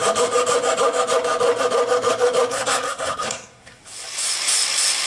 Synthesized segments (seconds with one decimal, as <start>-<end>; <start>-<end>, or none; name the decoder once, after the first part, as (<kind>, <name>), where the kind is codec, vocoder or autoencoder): 2.5-3.8 (codec, SNAC)